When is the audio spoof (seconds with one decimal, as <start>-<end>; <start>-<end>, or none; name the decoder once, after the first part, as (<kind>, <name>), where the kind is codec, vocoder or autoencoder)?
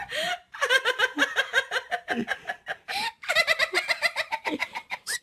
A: 0.0-2.2 (vocoder, BigVGAN v2); 3.1-5.2